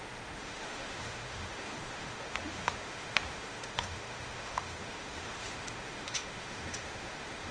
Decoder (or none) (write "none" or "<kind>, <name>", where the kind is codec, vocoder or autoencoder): autoencoder, DAC-VAE